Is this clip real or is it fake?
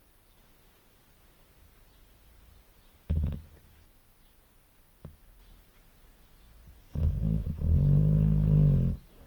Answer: real